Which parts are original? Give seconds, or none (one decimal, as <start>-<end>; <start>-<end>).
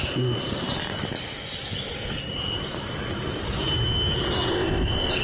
0.0-4.5